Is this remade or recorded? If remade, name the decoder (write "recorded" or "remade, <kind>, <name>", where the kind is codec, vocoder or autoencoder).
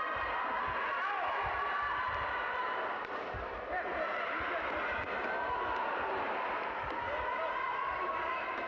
recorded